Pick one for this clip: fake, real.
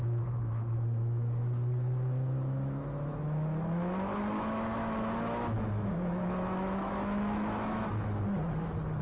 fake